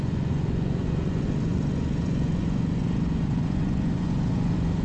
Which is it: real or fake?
fake